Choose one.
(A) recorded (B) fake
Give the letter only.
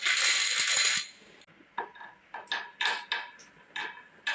A